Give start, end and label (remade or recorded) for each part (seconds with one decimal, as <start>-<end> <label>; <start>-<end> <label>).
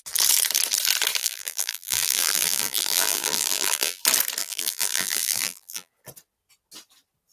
0.0-1.2 recorded; 1.2-4.0 remade; 4.0-4.4 recorded; 4.4-5.9 remade; 5.9-7.3 recorded